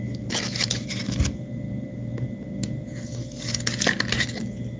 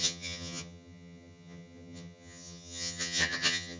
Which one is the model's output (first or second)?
second